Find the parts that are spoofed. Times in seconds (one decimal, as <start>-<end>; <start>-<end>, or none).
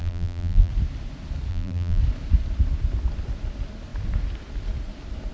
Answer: 0.0-0.7; 1.5-2.0